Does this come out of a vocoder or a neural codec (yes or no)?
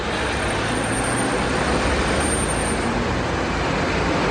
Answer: no